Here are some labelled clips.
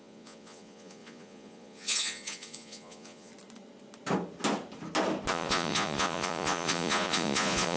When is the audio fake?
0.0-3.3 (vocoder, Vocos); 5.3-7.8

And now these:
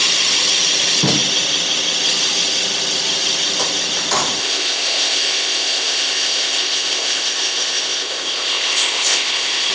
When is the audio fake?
4.4-9.7 (codec, ZipCodec)

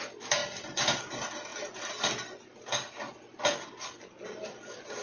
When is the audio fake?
none

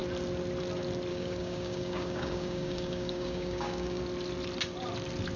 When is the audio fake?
1.1-4.0 (codec, DAC)

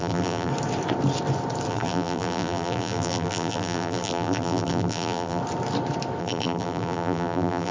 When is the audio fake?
0.0-0.5 (vocoder, BigVGAN v2); 1.7-5.4; 6.2-7.7

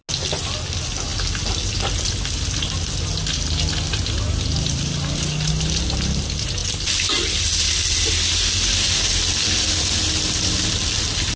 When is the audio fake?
none

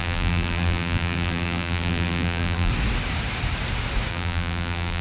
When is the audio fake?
0.0-2.7 (vocoder, BigVGAN v2); 4.1-5.0